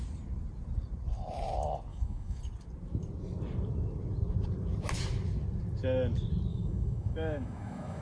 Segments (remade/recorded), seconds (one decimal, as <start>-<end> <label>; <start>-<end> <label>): 0.0-1.9 recorded; 1.9-2.4 remade; 2.4-6.5 recorded; 6.5-8.0 remade